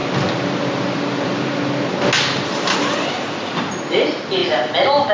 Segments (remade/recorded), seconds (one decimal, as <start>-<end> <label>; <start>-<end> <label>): 0.0-5.1 recorded